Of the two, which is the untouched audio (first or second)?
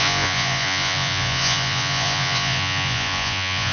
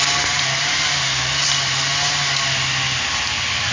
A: second